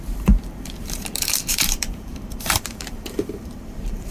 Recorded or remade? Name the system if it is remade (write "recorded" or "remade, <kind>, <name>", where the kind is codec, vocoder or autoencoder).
remade, vocoder, BigVGAN v2